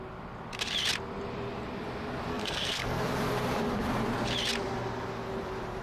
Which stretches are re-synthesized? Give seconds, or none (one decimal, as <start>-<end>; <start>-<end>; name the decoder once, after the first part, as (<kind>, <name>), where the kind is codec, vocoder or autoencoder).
2.3-3.0 (codec, SNAC)